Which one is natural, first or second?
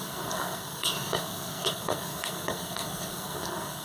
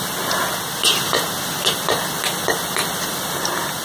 second